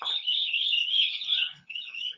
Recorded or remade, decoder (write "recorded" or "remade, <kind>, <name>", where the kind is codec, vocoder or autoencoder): remade, codec, HILCodec